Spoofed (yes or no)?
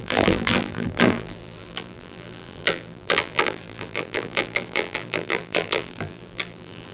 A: yes